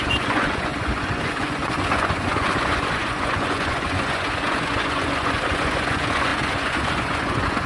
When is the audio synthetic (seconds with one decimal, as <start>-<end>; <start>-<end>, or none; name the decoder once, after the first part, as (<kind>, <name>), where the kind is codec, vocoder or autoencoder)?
0.0-7.7 (vocoder, Vocos)